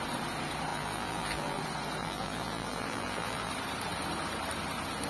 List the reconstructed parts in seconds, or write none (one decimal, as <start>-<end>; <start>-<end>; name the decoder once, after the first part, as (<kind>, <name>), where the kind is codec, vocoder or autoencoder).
0.7-1.6 (vocoder, BigVGAN v2); 2.0-3.5